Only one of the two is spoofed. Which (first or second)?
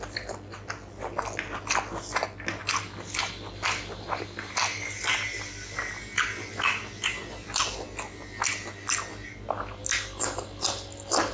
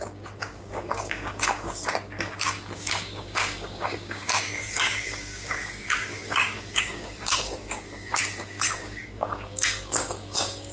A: second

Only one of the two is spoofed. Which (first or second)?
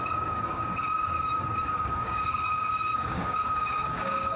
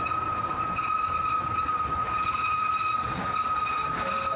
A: first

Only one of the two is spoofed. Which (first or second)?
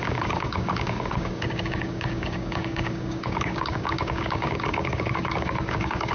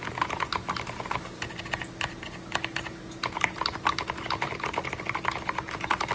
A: first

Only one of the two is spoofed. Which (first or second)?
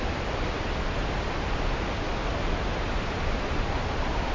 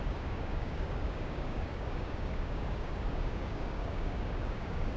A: second